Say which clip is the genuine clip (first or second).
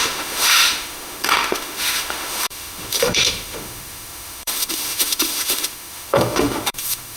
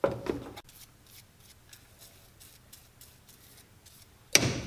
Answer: second